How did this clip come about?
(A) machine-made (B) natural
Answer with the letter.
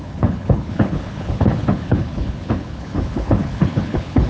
A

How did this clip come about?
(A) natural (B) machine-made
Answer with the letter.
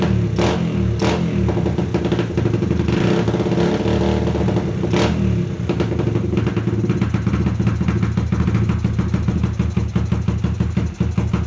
A